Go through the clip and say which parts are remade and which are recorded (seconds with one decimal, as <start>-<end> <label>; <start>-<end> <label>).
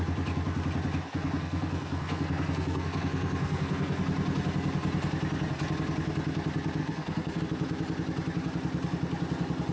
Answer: 0.0-1.1 recorded; 1.1-4.0 remade; 4.0-6.8 recorded; 6.8-7.4 remade; 7.4-9.7 recorded